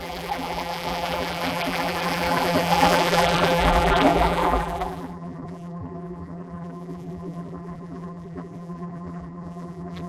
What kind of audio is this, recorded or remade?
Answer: remade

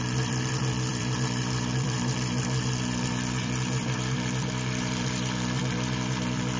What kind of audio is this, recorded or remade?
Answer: remade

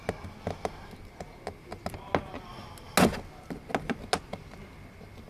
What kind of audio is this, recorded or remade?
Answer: recorded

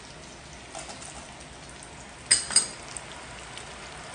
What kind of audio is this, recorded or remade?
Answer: recorded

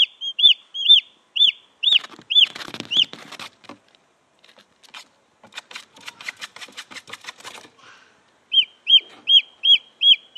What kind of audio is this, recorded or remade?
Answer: remade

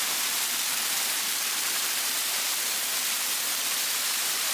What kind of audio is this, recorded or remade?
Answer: remade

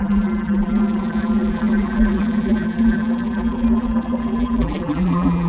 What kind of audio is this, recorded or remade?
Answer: remade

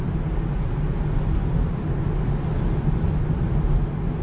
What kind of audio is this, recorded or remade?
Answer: recorded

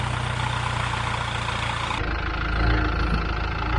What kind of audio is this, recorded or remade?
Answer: recorded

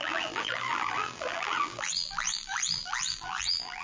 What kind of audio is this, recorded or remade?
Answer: remade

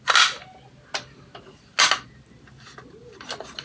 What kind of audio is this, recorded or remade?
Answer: recorded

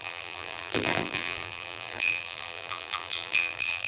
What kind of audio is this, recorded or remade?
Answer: remade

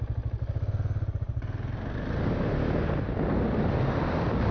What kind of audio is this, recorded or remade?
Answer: recorded